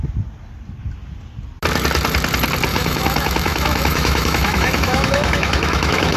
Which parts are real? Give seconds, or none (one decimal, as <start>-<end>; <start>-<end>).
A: 0.0-2.7